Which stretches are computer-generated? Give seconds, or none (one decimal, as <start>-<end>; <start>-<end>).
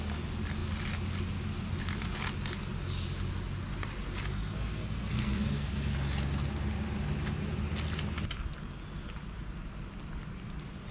4.3-5.9